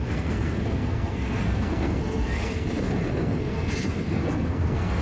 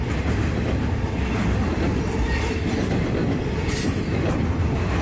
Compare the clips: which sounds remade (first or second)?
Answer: first